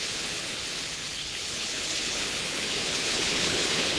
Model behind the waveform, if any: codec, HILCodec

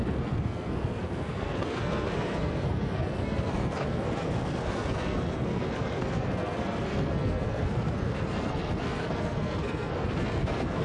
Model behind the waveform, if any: codec, SNAC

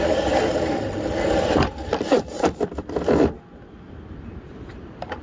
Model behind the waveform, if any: vocoder, BigVGAN v2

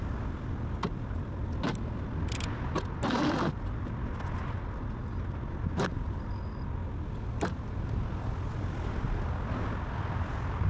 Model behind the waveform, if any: none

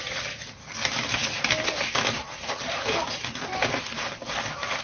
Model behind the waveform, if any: none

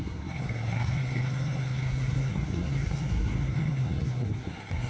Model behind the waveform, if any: codec, SNAC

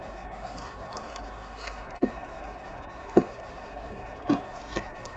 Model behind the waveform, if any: codec, SNAC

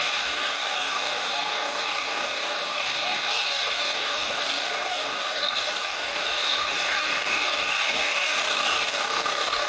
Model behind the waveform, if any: codec, DAC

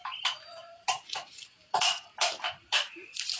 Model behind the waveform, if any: vocoder, BigVGAN v2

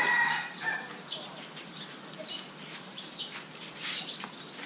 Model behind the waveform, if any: vocoder, BigVGAN v2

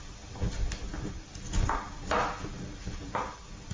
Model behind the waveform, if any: none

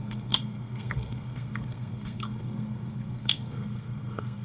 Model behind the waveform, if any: codec, SNAC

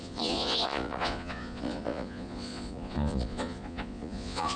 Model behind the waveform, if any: vocoder, Vocos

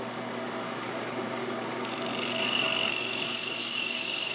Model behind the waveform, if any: codec, DAC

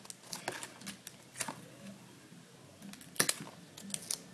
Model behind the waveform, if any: none